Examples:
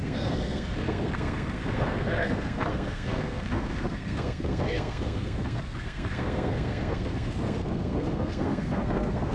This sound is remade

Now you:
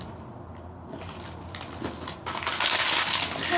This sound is recorded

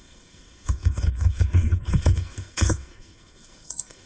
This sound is remade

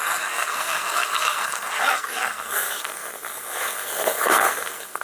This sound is remade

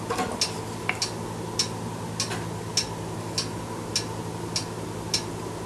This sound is recorded